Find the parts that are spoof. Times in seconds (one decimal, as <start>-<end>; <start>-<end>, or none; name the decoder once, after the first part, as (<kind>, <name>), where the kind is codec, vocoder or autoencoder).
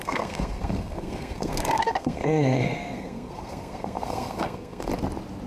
0.0-4.9 (codec, SNAC)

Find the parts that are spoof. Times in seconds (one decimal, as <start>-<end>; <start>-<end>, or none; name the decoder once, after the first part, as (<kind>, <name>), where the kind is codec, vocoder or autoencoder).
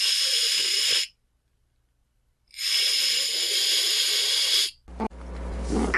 2.0-3.1 (vocoder, BigVGAN v2)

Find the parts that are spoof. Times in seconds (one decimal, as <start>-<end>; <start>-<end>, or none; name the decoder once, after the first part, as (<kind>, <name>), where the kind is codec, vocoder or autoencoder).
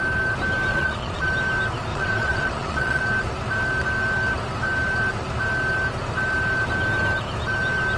0.7-1.3 (vocoder, Vocos); 1.9-3.0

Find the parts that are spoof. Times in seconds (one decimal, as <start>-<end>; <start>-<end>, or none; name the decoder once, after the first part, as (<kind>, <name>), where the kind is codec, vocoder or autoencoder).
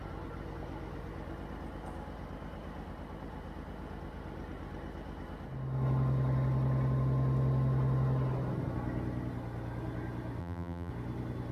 10.4-10.9 (vocoder, BigVGAN v2)